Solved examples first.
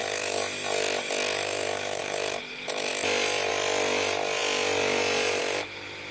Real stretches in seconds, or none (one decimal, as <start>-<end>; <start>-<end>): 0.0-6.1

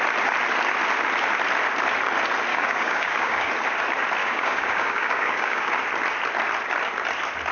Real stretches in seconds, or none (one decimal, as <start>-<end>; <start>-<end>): 0.0-2.5; 3.5-4.2; 5.7-7.5

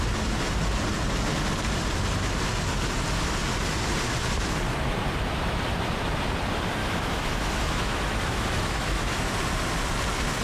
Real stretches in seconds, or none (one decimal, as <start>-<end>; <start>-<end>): 0.0-6.8; 9.3-10.4

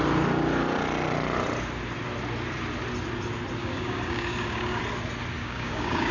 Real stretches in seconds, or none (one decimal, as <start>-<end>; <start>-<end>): 0.0-3.6; 4.8-5.4